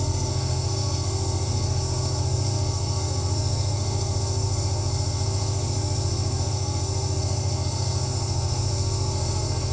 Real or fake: fake